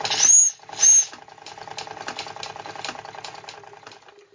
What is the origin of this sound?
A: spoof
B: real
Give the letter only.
B